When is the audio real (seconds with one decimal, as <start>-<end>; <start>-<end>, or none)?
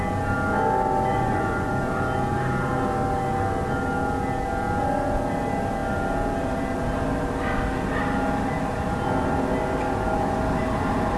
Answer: 0.0-1.1; 1.7-11.2